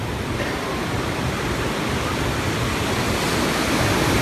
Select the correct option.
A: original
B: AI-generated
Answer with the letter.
A